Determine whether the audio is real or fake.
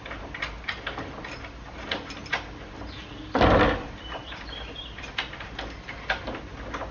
real